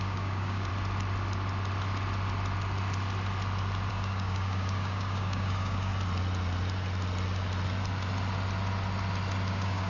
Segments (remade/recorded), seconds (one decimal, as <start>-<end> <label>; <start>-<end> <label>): 0.0-0.7 remade; 0.7-3.9 recorded; 3.9-5.9 remade; 5.9-9.5 recorded; 9.5-9.9 remade